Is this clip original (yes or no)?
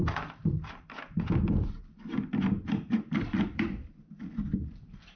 no